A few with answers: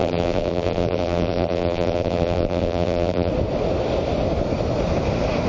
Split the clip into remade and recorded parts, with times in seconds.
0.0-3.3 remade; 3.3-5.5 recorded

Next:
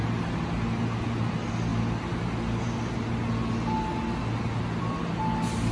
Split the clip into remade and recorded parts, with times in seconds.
0.0-5.7 recorded